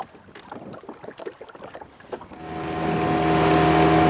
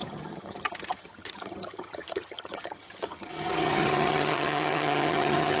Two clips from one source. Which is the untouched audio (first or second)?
first